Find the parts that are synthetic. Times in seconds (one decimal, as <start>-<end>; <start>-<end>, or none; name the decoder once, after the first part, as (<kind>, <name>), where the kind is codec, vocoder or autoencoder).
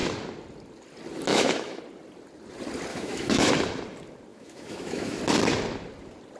1.3-1.8 (autoencoder, DAC-VAE); 2.9-3.5; 4.3-5.2